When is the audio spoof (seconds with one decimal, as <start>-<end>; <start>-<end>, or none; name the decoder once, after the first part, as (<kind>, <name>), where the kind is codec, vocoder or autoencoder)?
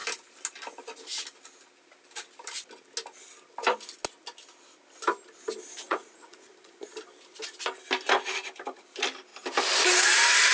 5.8-6.8 (vocoder, Vocos)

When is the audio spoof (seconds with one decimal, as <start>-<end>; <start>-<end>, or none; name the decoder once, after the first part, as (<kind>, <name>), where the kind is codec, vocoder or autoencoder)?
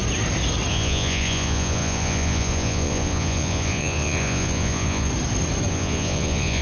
0.7-5.1 (vocoder, Vocos); 5.7-6.6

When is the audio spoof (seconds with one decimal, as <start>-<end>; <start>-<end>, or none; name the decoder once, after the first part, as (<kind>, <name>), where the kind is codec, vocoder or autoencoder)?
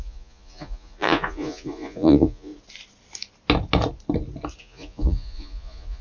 0.0-2.5 (vocoder, Vocos); 4.6-6.0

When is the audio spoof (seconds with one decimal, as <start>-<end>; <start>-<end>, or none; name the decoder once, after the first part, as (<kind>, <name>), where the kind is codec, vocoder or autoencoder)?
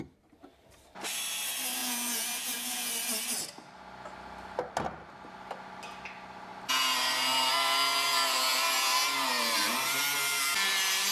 1.8-2.9 (vocoder, Vocos)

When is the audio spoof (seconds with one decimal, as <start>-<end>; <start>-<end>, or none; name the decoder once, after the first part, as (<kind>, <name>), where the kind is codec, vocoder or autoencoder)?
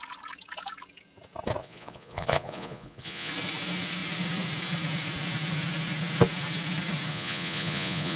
1.6-3.3 (vocoder, Vocos); 7.1-8.2